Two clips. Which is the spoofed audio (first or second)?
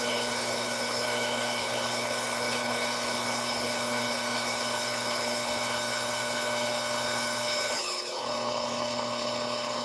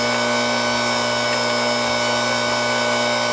first